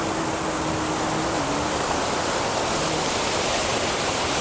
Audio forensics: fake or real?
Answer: real